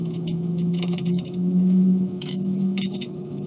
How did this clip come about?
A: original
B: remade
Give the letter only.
B